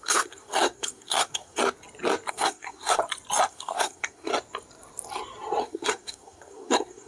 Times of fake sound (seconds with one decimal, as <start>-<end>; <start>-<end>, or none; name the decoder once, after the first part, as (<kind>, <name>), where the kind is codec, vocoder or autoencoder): 0.0-1.6 (codec, SNAC); 2.3-3.0; 3.5-4.3; 5.6-7.1